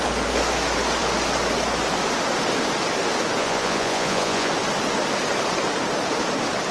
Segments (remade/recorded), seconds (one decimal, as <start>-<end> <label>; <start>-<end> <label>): 0.0-3.4 recorded; 3.4-4.5 remade; 4.5-6.7 recorded